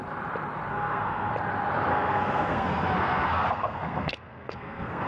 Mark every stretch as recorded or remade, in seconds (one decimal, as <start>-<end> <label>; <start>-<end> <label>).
0.0-0.7 recorded; 0.7-1.3 remade; 1.3-1.9 recorded; 1.9-5.1 remade